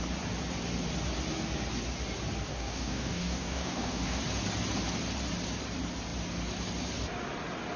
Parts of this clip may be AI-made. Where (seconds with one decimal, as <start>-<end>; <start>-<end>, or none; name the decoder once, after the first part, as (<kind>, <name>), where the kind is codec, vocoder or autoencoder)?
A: 2.5-4.2 (codec, DAC)